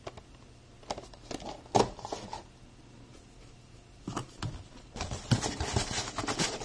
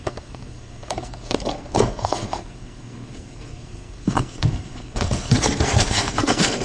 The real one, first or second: first